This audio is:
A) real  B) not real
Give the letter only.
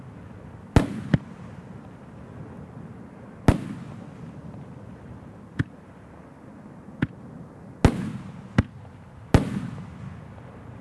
A